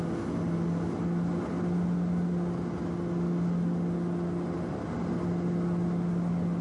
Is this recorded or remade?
recorded